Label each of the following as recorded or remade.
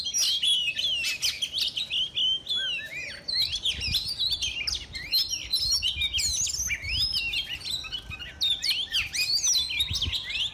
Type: recorded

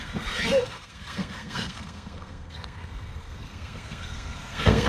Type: remade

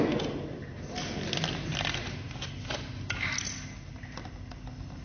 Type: recorded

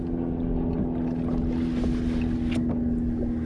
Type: recorded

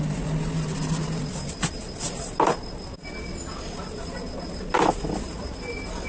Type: recorded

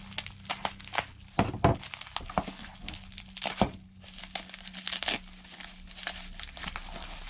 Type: recorded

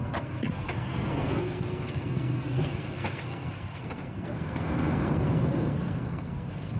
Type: remade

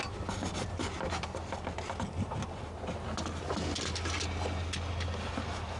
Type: recorded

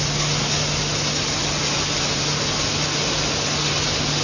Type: recorded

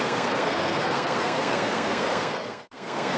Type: remade